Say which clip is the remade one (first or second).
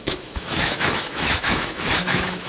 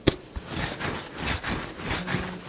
first